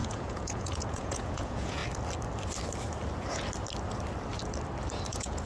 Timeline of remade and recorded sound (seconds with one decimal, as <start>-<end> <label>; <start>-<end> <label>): 0.0-1.8 remade; 1.8-5.1 recorded; 5.1-5.5 remade